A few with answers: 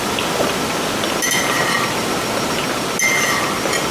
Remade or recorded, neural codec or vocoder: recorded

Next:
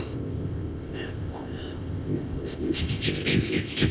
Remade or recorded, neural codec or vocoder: remade, codec, ZipCodec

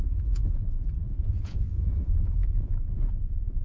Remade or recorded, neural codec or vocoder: remade, vocoder, Vocos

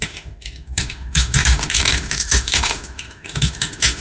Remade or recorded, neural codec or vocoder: remade, autoencoder, DAC-VAE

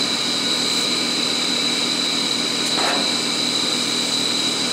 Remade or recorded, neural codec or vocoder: recorded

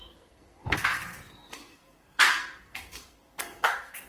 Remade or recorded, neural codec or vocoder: remade, codec, SNAC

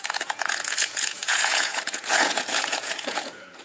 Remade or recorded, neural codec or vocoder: remade, vocoder, Vocos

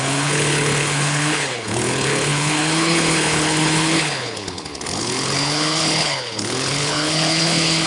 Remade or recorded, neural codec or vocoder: remade, codec, HILCodec